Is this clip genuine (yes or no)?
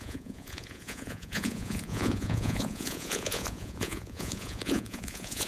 no